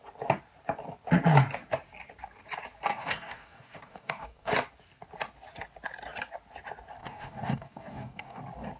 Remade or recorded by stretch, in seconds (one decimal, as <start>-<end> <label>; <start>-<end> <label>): 0.0-2.9 recorded; 2.9-4.5 remade; 4.5-7.0 recorded; 7.0-8.4 remade; 8.4-8.8 recorded